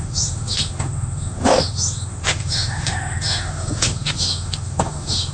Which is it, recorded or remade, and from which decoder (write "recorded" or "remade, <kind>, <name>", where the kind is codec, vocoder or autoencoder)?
remade, autoencoder, DAC-VAE